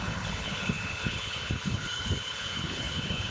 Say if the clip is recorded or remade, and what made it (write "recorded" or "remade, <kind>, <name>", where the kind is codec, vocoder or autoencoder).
remade, codec, HILCodec